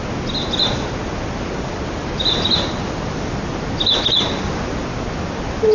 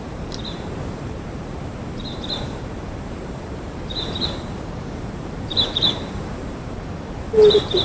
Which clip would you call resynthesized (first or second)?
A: second